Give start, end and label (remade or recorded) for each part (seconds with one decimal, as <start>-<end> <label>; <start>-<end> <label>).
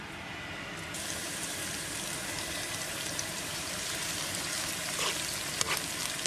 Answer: 0.0-1.2 recorded; 1.2-5.0 remade; 5.0-6.3 recorded